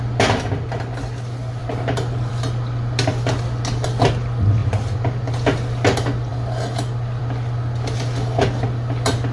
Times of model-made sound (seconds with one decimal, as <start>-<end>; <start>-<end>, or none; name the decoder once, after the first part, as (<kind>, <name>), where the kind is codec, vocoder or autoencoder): 1.6-2.3 (vocoder, BigVGAN v2); 4.6-5.3